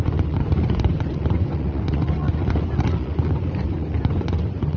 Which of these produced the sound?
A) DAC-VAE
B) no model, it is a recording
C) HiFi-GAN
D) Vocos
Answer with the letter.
D